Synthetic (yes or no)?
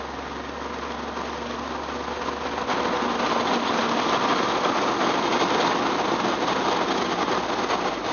no